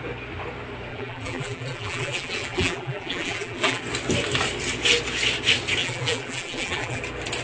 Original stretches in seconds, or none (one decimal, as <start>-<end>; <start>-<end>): 0.0-0.9; 3.8-5.8; 7.0-7.4